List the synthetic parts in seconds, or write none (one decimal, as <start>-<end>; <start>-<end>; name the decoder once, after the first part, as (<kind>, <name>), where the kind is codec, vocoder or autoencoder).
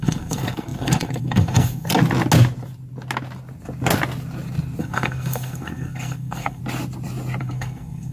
0.0-1.9 (codec, SNAC); 4.8-6.6; 7.4-8.1